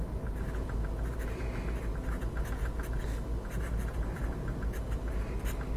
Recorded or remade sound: recorded